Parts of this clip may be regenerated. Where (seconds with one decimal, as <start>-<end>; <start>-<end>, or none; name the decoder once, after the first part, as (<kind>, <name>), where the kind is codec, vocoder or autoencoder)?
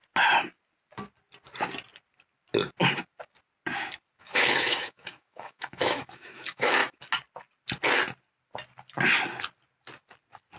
4.2-6.8 (autoencoder, DAC-VAE)